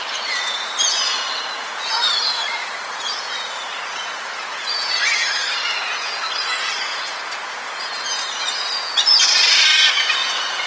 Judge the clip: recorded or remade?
remade